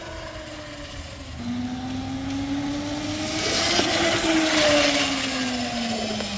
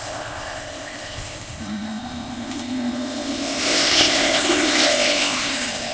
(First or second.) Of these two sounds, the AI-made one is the second